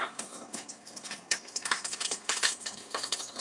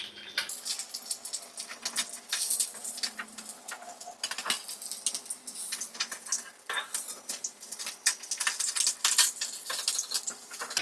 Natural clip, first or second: second